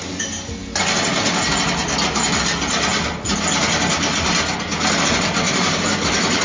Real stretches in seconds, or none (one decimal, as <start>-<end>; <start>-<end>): 0.0-6.4